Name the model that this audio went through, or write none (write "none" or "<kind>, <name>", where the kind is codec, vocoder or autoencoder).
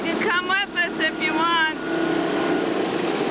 none